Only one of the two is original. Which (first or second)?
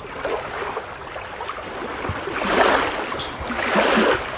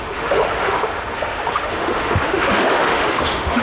first